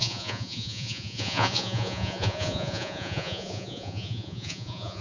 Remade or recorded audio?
remade